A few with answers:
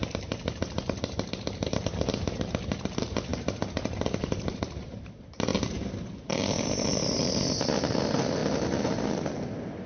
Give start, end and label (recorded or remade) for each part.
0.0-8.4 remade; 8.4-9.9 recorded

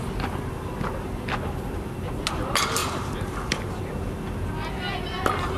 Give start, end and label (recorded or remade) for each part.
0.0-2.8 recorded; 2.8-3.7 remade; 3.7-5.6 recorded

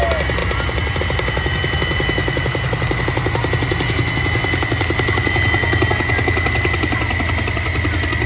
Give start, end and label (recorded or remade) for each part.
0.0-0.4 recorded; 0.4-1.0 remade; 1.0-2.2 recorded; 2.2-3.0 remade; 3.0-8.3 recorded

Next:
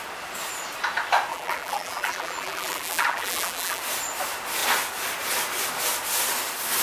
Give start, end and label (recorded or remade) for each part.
0.0-1.3 recorded; 1.3-3.8 remade; 3.8-6.8 recorded

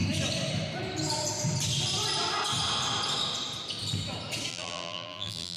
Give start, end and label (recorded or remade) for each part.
0.0-4.5 recorded; 4.5-5.6 remade

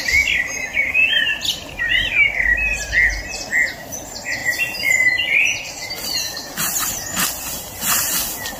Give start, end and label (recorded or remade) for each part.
0.0-0.7 recorded; 0.7-1.9 remade; 1.9-2.7 recorded; 2.7-3.5 remade; 3.5-8.6 recorded